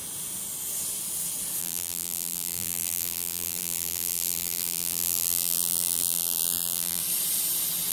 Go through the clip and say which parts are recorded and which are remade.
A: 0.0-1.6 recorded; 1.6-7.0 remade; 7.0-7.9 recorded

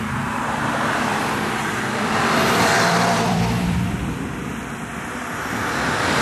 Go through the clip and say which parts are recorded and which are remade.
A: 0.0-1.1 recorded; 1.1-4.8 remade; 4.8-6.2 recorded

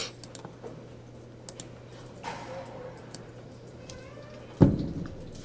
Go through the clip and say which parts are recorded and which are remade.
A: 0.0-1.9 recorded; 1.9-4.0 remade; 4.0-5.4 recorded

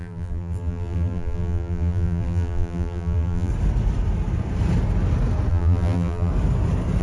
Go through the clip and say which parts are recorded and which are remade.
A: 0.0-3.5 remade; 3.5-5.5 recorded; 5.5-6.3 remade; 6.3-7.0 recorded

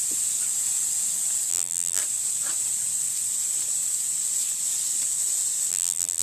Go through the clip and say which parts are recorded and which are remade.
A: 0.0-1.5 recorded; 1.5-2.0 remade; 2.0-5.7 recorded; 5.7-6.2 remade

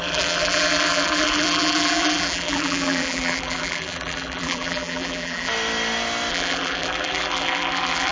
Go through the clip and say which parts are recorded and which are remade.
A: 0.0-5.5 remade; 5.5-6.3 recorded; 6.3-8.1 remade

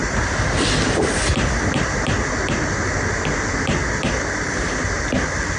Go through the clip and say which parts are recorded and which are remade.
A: 0.0-5.6 recorded